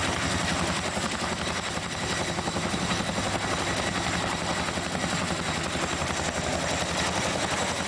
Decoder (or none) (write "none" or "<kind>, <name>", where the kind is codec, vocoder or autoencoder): none